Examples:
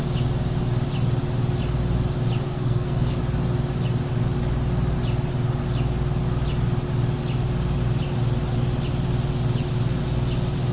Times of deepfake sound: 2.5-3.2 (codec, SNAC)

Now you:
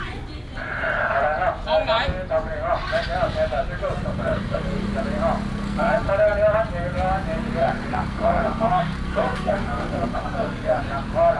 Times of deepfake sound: 4.1-4.9 (codec, SNAC); 5.5-6.1; 7.6-10.8

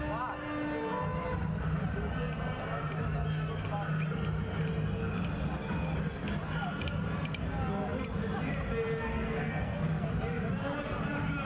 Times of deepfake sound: 9.1-10.1 (codec, SNAC)

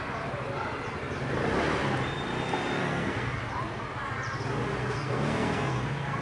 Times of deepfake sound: 2.8-3.4 (codec, SNAC); 4.8-6.2